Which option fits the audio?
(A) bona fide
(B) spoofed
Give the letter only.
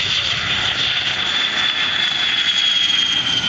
A